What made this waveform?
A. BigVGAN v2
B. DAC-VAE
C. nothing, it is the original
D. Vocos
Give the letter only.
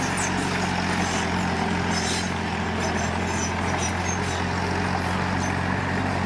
C